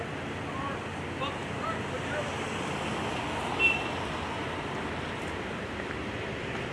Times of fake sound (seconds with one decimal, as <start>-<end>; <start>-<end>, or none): none